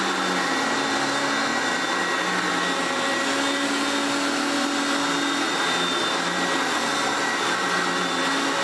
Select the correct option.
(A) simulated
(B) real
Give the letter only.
B